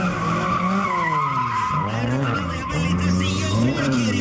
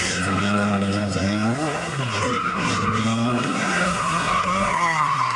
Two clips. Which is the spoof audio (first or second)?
second